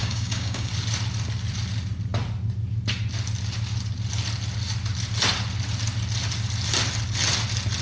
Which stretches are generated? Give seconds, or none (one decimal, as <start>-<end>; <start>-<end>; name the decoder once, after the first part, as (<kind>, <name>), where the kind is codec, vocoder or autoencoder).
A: 0.0-0.7 (codec, DAC)